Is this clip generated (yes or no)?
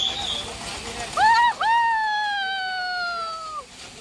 no